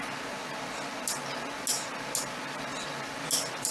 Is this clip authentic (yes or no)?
yes